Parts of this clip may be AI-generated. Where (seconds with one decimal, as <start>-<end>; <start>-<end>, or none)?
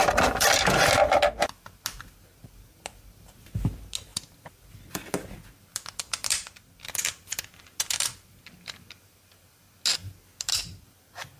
none